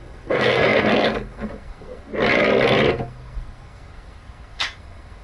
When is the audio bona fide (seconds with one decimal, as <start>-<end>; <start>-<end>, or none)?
2.1-2.9